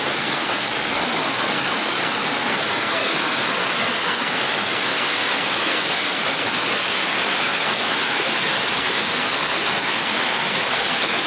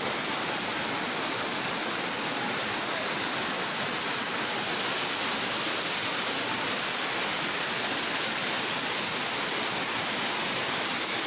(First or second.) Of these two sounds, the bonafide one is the second